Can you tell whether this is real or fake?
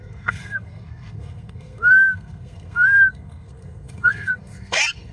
fake